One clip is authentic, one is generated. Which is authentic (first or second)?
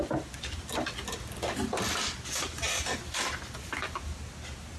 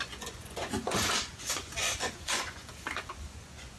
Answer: first